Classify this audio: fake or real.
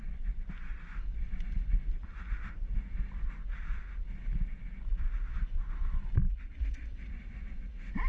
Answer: real